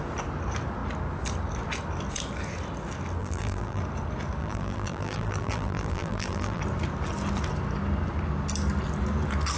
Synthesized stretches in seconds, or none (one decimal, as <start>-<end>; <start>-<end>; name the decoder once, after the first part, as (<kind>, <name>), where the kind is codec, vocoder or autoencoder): 3.2-3.8 (vocoder, BigVGAN v2); 4.4-6.6